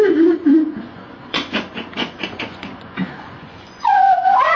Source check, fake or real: fake